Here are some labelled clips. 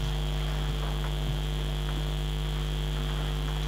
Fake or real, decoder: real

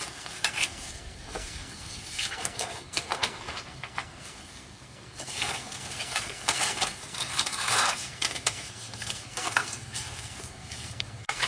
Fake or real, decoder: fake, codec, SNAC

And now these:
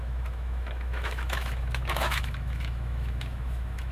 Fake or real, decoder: fake, autoencoder, DAC-VAE